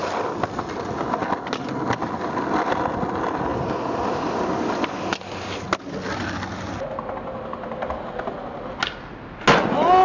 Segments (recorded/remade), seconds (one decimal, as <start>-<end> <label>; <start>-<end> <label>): 0.0-10.0 recorded